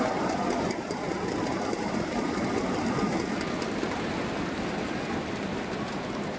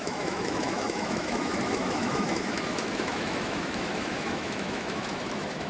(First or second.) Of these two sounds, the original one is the first